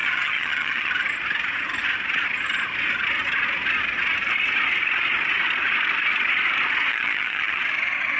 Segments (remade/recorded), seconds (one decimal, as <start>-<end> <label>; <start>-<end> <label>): 0.0-0.9 remade; 0.9-6.9 recorded; 6.9-7.6 remade; 7.6-8.2 recorded